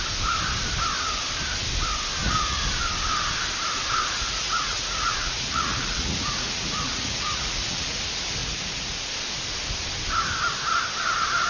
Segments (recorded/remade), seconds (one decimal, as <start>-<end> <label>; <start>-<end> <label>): 0.0-2.2 recorded; 2.2-2.7 remade; 2.7-4.0 recorded; 4.0-8.0 remade; 8.0-8.4 recorded; 8.4-9.1 remade; 9.1-11.5 recorded